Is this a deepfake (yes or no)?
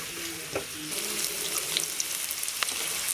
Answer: no